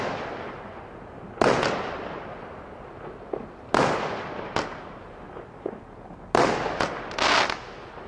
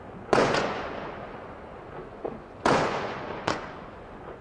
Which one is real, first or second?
first